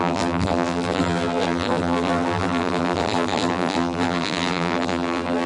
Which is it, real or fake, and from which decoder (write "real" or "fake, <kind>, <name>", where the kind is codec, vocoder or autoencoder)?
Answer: fake, vocoder, BigVGAN v2